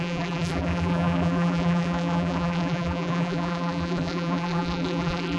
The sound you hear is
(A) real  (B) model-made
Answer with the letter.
B